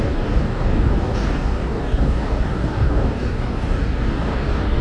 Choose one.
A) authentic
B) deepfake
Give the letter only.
B